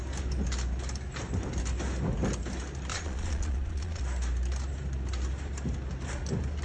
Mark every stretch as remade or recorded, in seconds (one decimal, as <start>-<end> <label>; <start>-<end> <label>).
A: 0.0-2.9 recorded; 2.9-4.0 remade; 4.0-6.6 recorded